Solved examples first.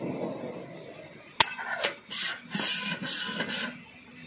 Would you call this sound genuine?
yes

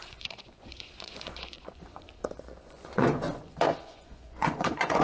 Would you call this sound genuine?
no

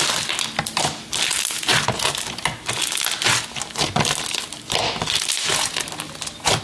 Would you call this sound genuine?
yes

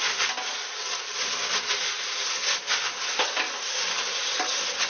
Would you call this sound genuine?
yes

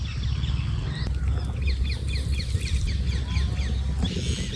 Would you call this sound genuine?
yes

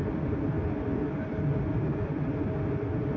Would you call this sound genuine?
yes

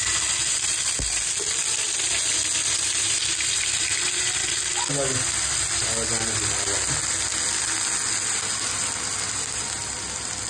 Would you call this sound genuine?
yes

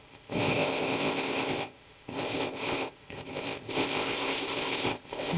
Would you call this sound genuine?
no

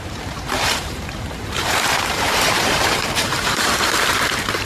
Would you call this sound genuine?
no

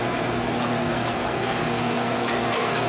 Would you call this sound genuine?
no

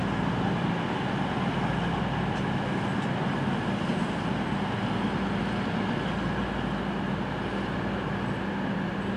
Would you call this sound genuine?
yes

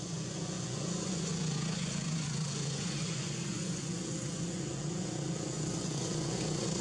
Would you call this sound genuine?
no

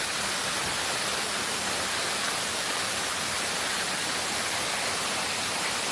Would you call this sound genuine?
yes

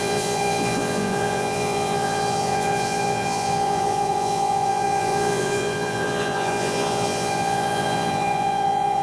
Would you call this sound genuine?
no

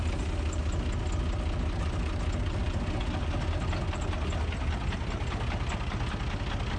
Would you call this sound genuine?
yes